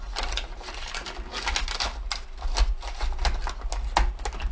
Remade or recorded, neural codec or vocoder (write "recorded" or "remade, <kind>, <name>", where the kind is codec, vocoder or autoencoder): recorded